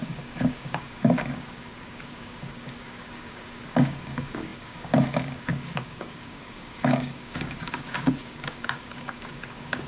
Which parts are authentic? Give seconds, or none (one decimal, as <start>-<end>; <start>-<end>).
none